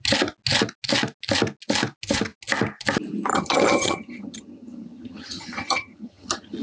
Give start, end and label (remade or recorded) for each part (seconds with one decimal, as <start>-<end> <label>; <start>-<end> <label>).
0.0-3.3 recorded; 3.3-6.6 remade